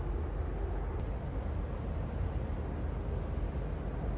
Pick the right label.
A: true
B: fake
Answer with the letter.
A